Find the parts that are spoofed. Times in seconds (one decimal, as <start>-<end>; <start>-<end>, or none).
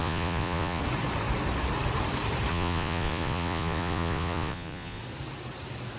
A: 0.0-0.8; 2.5-5.0